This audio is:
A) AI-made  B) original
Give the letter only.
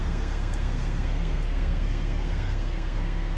A